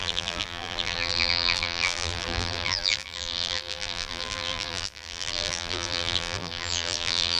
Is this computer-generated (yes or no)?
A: yes